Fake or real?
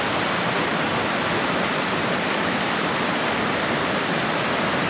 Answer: real